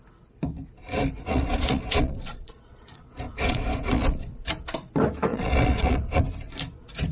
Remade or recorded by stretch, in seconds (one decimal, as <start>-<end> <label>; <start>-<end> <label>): 0.0-1.3 recorded; 1.3-4.4 remade; 4.4-5.3 recorded; 5.3-6.2 remade; 6.2-7.1 recorded